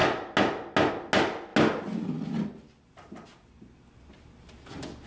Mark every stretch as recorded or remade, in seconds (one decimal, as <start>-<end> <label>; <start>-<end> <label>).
0.0-5.1 recorded